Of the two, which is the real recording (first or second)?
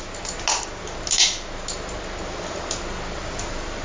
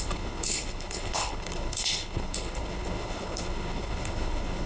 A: first